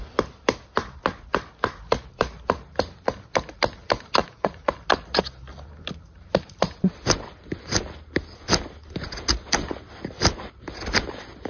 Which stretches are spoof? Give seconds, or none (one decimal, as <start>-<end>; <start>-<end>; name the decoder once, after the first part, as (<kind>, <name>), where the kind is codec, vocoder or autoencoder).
4.2-4.7 (vocoder, Vocos)